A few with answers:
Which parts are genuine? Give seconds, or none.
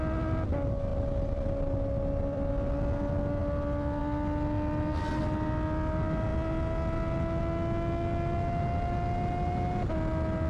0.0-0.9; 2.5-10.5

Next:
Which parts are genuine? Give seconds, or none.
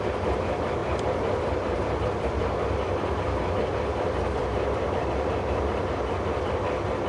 0.0-0.8; 5.1-7.1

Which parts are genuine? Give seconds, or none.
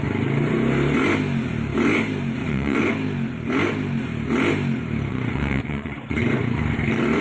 0.0-2.4; 2.9-5.1; 6.6-7.2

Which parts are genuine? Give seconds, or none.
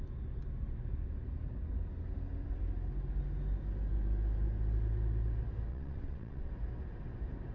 0.0-5.7; 6.5-7.5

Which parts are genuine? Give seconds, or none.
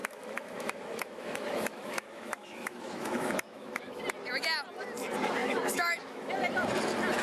4.0-5.4; 6.3-7.2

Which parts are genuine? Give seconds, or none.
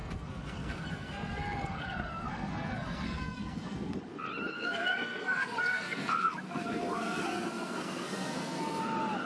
4.0-4.5; 8.8-9.3